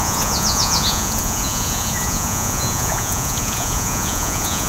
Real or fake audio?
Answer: fake